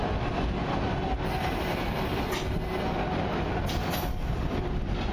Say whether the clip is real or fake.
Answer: real